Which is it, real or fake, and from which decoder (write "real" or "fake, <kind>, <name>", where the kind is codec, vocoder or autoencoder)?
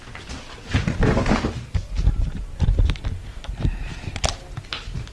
real